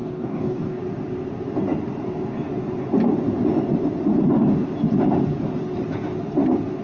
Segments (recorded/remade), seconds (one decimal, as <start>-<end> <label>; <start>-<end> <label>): 0.0-0.8 remade; 0.8-6.8 recorded